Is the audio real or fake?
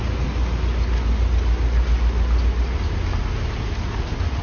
real